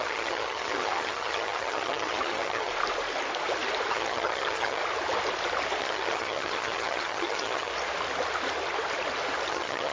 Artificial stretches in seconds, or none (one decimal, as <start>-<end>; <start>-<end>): 0.0-2.7; 3.9-4.8; 5.8-7.7; 9.5-9.9